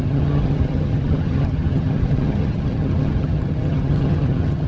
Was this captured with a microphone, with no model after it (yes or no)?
no